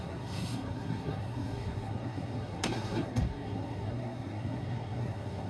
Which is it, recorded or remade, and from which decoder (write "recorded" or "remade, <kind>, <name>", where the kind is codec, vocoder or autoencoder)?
remade, codec, SNAC